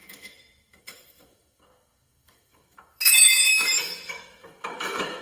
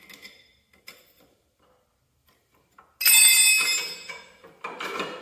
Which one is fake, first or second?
first